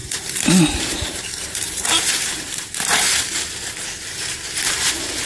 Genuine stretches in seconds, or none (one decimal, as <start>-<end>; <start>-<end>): 3.2-5.3